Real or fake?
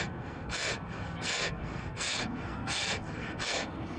fake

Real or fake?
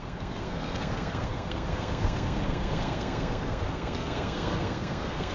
fake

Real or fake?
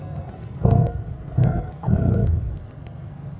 fake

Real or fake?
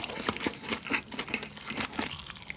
fake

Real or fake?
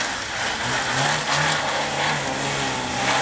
real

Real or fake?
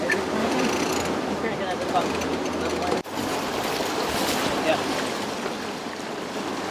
real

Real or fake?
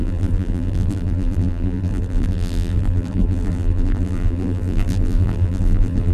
fake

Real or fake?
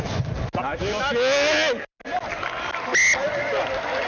real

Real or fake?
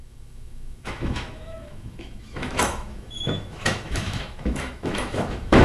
fake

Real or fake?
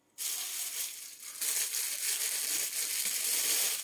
real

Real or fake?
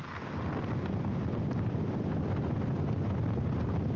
real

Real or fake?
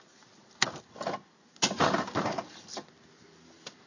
real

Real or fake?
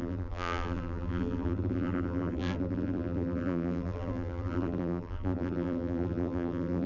fake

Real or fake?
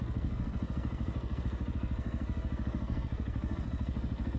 fake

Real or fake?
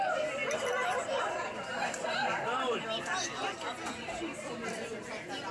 real